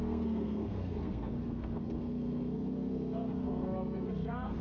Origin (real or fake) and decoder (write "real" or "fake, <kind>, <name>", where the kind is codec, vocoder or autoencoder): fake, codec, SNAC